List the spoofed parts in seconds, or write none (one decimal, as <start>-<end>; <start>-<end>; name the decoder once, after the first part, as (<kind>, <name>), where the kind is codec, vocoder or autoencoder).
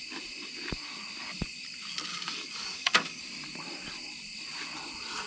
2.1-3.2 (codec, DAC)